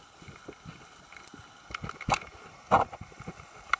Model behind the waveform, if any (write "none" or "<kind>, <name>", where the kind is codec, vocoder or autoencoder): none